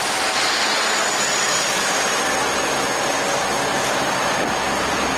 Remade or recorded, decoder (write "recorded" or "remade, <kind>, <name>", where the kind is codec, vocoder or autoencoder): recorded